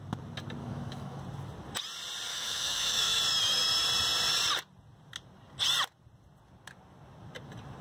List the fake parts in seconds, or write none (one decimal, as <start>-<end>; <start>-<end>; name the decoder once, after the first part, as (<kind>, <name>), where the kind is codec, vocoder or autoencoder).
0.6-1.2 (autoencoder, DAC-VAE); 2.3-3.2